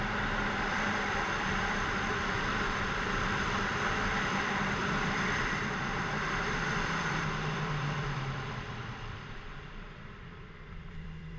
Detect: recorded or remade remade